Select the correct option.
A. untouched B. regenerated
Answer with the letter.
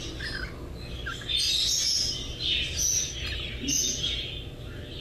A